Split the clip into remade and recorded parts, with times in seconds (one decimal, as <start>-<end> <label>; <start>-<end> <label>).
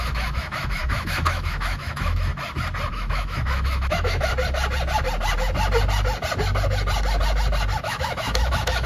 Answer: 0.0-2.3 remade; 2.3-2.9 recorded; 2.9-4.3 remade; 4.3-7.8 recorded; 7.8-8.9 remade